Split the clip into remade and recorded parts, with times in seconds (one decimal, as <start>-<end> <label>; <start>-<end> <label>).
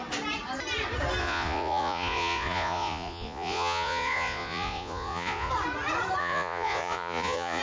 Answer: 0.0-1.2 recorded; 1.2-5.5 remade; 5.5-6.2 recorded; 6.2-7.6 remade